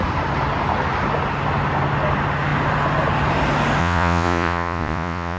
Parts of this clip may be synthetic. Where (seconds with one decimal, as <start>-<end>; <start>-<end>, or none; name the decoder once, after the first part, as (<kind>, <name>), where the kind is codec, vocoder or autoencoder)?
3.8-5.4 (vocoder, Vocos)